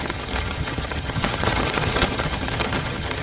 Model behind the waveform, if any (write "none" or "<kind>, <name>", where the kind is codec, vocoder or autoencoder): vocoder, HiFi-GAN